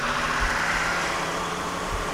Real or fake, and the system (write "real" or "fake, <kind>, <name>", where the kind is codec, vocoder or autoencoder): fake, vocoder, BigVGAN v2